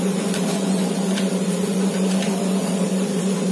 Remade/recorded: remade